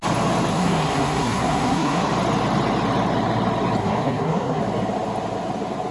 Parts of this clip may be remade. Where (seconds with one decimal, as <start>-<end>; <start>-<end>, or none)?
0.5-2.1; 3.8-4.6